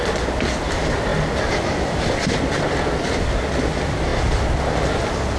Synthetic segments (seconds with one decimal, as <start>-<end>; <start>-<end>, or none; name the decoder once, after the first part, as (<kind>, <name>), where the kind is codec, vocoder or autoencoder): none